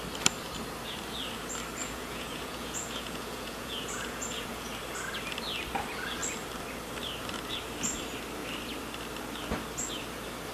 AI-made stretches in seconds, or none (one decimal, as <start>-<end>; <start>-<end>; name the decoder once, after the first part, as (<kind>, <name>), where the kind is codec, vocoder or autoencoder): 1.8-4.7 (vocoder, Vocos)